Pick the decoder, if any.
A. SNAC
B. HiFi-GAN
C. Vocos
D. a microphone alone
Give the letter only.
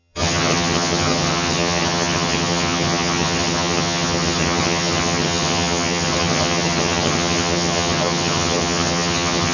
B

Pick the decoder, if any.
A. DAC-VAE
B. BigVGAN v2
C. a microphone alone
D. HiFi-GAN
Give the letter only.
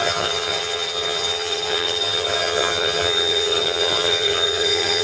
D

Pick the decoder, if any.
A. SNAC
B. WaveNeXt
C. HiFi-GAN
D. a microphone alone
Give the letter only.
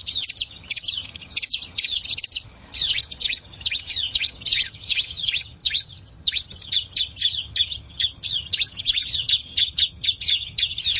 C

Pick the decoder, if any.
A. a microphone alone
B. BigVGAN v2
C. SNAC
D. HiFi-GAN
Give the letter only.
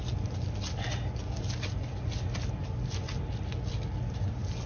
A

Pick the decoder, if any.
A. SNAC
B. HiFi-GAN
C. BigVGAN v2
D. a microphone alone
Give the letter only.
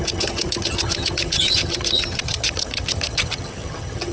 B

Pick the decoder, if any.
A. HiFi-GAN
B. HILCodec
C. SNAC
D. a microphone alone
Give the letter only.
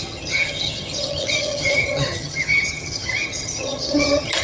A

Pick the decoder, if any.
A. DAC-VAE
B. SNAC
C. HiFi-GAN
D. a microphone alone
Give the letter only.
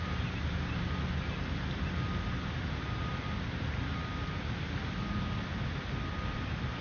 D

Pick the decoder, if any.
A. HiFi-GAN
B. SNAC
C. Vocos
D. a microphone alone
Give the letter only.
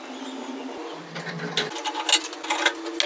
D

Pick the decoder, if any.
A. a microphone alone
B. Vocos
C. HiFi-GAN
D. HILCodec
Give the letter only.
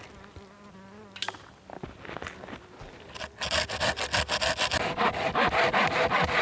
A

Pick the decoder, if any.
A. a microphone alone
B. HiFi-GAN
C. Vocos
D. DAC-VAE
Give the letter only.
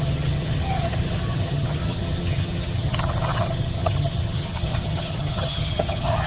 B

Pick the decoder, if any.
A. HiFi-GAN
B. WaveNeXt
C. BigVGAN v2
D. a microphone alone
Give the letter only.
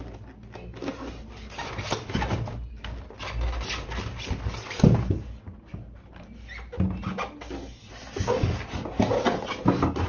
D